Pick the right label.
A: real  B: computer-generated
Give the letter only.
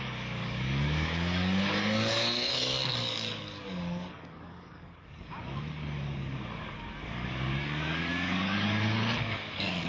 B